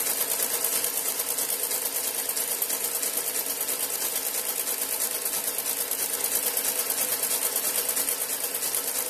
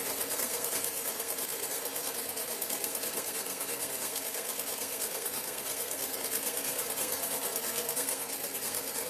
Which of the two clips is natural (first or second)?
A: first